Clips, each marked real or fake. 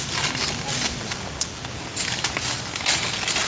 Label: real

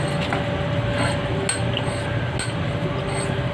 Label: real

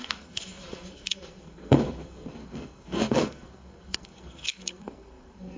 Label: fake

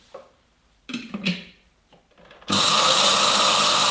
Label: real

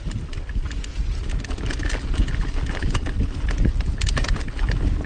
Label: real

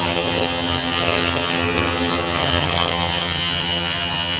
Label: fake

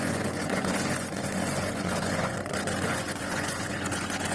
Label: fake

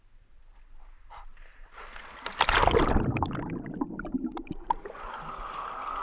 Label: real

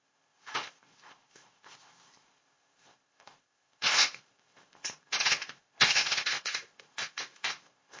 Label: fake